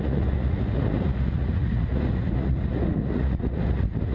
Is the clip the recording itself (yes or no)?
no